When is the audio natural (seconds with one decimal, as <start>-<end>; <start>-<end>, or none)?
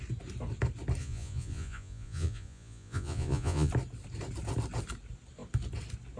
0.0-1.0; 3.7-6.2